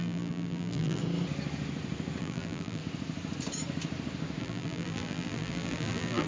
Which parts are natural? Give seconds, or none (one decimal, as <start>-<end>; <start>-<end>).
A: 1.0-2.2; 2.8-4.4